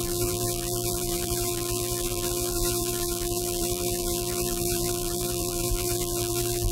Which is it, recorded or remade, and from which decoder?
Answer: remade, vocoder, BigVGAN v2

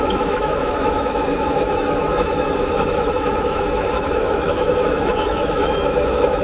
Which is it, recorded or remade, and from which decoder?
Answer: remade, autoencoder, DAC-VAE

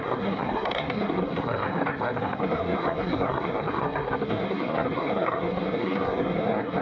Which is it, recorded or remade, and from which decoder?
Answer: remade, codec, SNAC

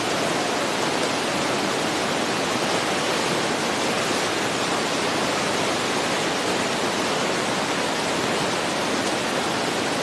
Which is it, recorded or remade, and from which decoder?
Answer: recorded